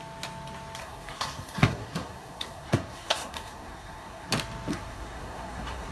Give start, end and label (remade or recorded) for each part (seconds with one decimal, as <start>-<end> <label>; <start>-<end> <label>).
0.0-0.8 recorded; 0.8-4.3 remade; 4.3-4.7 recorded; 4.7-5.9 remade